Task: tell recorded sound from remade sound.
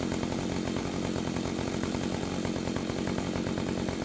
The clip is recorded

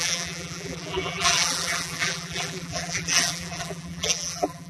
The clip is remade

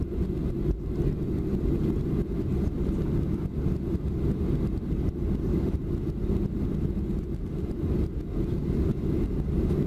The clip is recorded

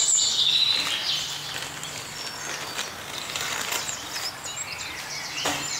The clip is recorded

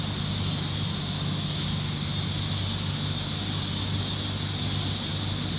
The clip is recorded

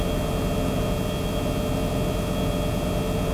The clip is recorded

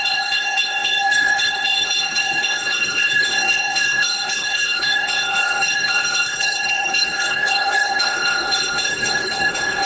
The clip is remade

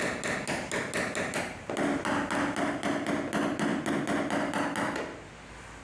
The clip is recorded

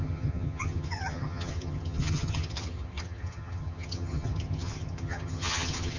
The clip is remade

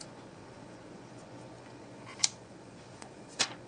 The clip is remade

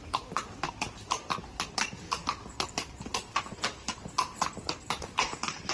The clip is recorded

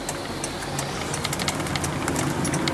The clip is recorded